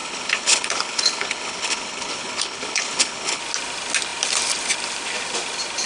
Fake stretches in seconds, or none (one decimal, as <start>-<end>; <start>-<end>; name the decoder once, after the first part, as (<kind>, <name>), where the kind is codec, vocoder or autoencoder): 0.0-3.4 (codec, HILCodec)